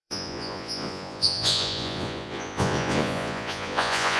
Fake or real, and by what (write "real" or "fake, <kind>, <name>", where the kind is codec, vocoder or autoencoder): fake, vocoder, Vocos